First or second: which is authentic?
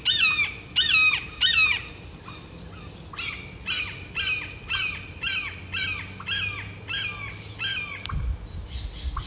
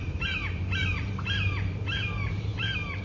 first